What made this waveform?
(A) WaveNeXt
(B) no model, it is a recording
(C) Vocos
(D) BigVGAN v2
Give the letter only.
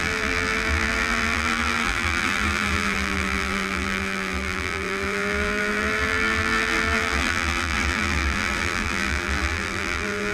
D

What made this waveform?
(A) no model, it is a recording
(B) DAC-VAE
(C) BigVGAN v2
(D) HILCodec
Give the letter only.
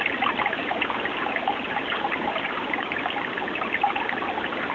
A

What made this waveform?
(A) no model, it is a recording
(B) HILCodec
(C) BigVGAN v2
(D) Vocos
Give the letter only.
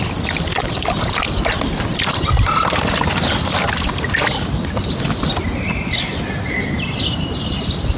A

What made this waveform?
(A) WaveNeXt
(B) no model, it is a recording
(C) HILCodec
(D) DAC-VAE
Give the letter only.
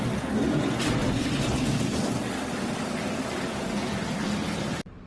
B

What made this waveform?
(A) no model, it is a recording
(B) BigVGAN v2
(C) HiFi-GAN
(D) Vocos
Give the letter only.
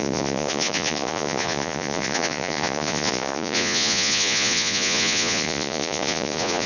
D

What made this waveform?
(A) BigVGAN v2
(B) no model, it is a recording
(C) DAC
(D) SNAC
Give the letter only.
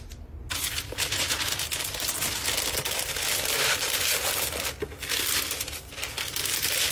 B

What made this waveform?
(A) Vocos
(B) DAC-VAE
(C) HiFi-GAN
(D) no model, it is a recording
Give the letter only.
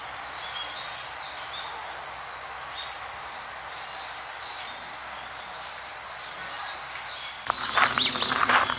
D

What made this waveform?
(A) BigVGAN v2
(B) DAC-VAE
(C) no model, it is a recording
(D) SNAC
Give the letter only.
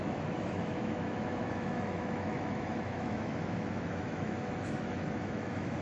B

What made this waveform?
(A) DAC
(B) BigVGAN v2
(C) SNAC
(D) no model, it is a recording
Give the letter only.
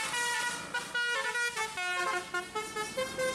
D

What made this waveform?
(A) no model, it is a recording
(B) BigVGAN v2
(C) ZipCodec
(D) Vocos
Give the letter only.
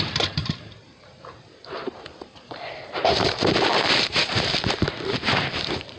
B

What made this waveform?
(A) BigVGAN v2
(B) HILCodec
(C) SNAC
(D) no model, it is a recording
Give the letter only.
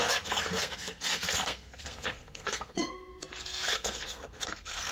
C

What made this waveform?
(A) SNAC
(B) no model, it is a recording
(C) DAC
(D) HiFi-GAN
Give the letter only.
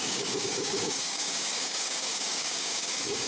C